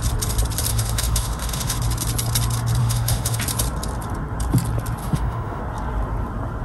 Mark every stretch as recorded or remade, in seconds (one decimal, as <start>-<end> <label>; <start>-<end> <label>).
0.0-0.7 recorded; 0.7-1.8 remade; 1.8-2.8 recorded; 2.8-3.4 remade; 3.4-5.0 recorded; 5.0-5.6 remade; 5.6-6.6 recorded